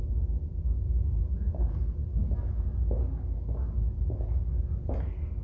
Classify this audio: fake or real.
real